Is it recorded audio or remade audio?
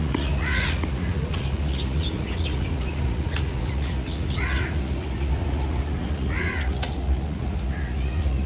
remade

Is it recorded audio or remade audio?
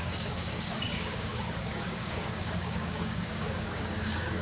remade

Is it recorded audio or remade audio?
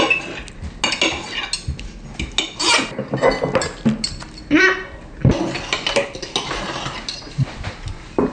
recorded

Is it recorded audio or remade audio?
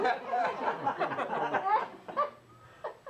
recorded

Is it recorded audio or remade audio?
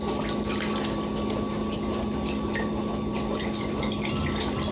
recorded